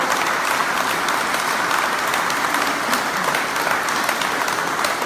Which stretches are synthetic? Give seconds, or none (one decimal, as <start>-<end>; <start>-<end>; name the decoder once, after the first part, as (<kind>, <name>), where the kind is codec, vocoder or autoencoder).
none